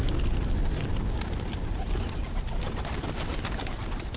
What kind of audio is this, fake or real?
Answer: real